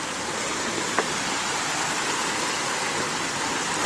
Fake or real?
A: real